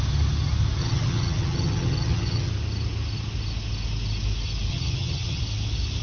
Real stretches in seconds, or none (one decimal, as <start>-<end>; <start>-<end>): 0.0-0.8; 2.5-4.7; 5.4-6.0